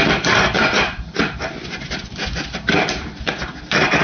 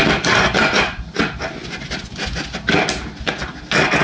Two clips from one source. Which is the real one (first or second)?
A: second